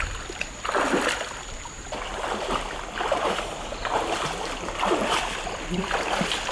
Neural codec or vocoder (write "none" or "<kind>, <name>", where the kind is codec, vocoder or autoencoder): none